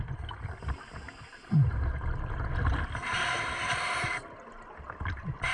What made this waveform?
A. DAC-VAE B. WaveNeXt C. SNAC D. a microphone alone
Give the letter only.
D